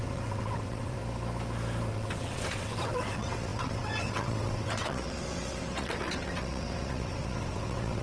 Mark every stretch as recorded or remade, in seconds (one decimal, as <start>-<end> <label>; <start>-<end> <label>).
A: 0.0-1.0 remade; 1.0-1.9 recorded; 1.9-8.0 remade